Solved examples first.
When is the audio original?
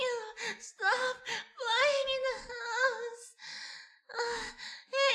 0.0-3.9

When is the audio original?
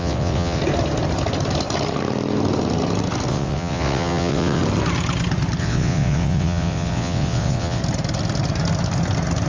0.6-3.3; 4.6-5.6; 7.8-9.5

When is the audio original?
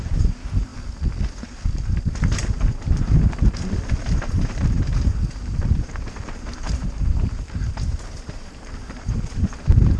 0.7-4.3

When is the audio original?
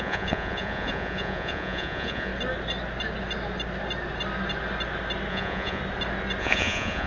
2.3-5.3; 5.8-6.4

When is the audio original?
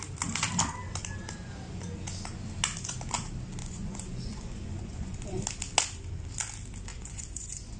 0.0-3.6; 5.4-6.9